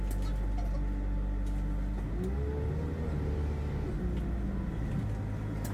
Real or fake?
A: real